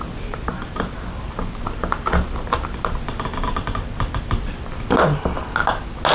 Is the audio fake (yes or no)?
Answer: no